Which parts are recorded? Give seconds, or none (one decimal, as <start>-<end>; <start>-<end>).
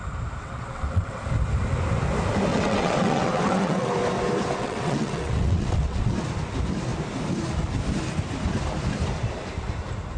0.0-0.4; 1.2-2.5; 3.9-4.6; 6.1-10.2